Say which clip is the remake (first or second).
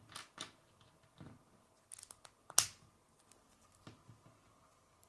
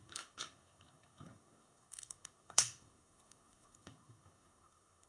second